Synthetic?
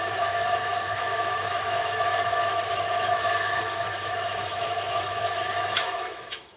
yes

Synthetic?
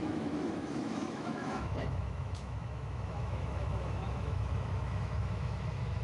yes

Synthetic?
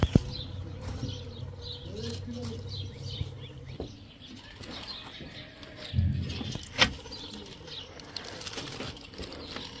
no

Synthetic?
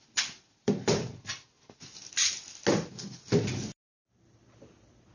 no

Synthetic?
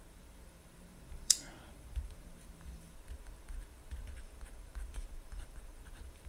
yes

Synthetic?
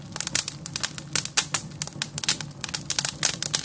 no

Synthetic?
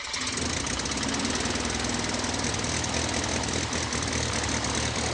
no